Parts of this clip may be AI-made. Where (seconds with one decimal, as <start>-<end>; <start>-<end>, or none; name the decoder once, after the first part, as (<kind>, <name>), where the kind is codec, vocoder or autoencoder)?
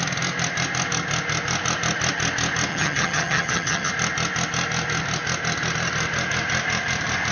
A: 2.7-3.9 (vocoder, HiFi-GAN)